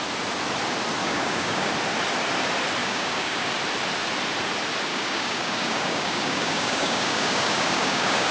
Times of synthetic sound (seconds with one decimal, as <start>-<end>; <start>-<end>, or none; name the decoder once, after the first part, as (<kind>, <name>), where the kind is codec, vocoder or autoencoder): 1.0-1.7 (codec, DAC); 2.8-3.5; 4.9-8.3

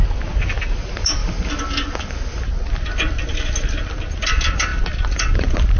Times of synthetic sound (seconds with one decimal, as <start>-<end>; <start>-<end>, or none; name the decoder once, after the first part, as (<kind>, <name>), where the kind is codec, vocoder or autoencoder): none

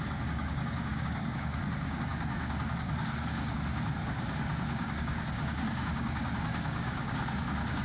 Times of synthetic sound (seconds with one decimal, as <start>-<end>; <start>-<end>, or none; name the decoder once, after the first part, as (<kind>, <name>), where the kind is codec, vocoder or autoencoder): 0.0-7.8 (codec, DAC)

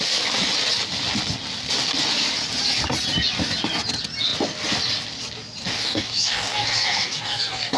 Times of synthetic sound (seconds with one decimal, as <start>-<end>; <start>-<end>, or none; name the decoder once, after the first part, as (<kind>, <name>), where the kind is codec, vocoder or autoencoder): 5.6-7.8 (codec, DAC)

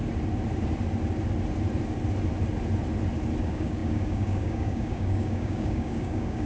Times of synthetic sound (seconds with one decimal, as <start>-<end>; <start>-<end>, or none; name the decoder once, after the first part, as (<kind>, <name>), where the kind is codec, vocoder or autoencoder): 3.4-6.5 (codec, DAC)

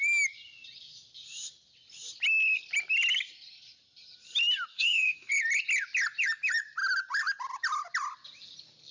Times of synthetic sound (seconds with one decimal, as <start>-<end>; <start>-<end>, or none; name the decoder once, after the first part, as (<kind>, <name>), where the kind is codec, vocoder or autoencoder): 4.7-5.3 (codec, DAC)

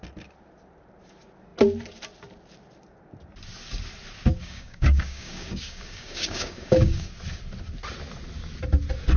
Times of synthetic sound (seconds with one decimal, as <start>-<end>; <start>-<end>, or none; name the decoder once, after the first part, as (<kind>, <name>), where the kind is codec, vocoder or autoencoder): 4.4-7.1 (codec, DAC)